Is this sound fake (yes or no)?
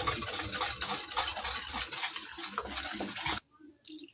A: no